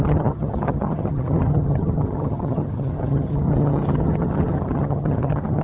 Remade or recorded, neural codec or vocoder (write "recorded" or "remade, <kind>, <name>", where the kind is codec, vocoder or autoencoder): remade, vocoder, HiFi-GAN